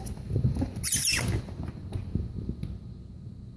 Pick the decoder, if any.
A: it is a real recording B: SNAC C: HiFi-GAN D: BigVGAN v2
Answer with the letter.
A